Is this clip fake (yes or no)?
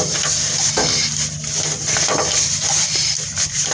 no